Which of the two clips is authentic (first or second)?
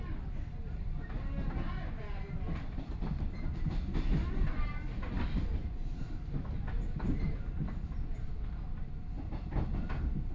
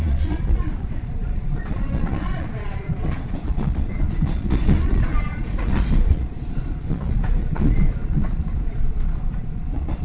first